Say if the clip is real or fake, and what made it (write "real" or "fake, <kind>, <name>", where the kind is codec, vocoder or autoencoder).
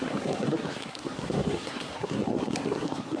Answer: fake, codec, SNAC